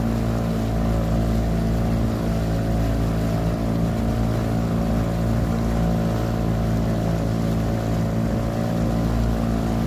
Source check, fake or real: real